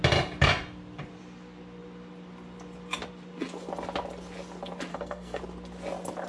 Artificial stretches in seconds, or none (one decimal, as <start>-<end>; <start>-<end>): 4.9-5.4